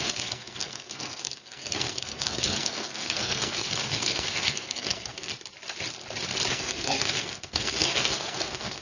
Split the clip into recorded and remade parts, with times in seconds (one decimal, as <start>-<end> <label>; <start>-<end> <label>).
0.0-5.3 remade; 5.3-6.5 recorded; 6.5-8.8 remade